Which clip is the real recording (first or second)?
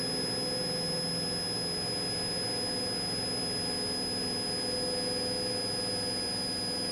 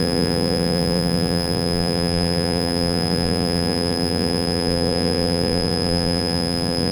first